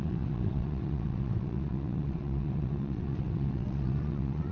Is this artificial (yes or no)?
yes